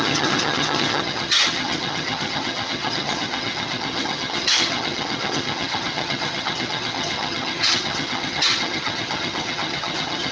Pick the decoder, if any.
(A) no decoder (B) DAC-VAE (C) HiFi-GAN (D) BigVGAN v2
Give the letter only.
C